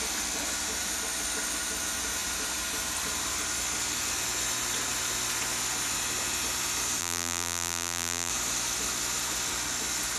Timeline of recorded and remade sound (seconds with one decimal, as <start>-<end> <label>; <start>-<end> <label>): 0.0-7.0 recorded; 7.0-8.3 remade; 8.3-10.2 recorded